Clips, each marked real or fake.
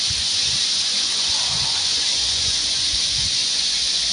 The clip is fake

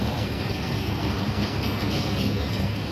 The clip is fake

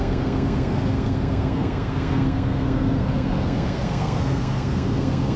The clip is fake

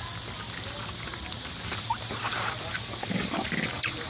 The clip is real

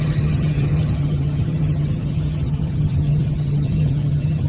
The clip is fake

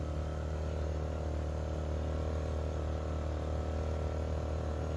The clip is real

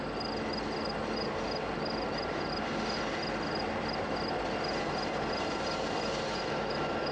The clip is real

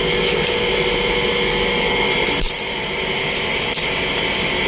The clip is real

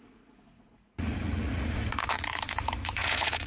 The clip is fake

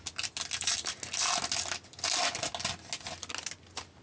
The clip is real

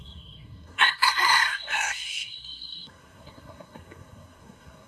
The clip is fake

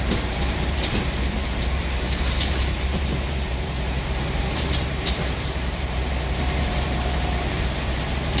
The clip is fake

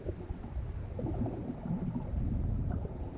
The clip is fake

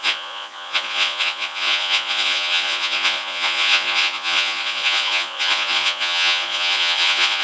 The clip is fake